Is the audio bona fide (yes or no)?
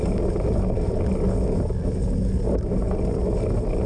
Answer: yes